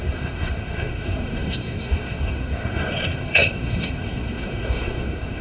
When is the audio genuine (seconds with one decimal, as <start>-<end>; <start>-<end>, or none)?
none